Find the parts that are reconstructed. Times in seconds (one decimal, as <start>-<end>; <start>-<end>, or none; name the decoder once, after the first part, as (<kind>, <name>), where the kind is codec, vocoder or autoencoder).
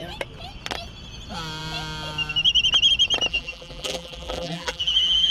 3.3-5.3 (vocoder, BigVGAN v2)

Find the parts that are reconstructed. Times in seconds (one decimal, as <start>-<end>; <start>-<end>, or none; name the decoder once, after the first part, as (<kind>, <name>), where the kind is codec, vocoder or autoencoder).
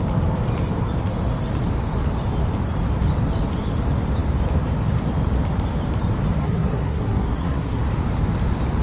6.4-7.8 (codec, SNAC)